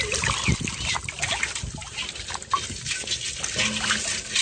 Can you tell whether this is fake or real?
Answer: real